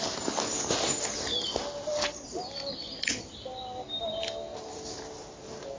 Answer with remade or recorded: recorded